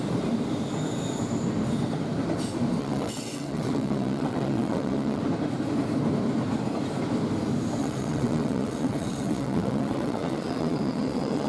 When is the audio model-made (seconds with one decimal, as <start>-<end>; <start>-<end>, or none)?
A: 2.8-5.2; 7.8-11.5